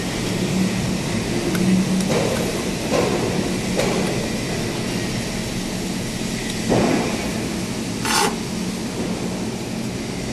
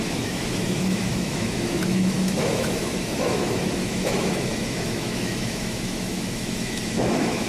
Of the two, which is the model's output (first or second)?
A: second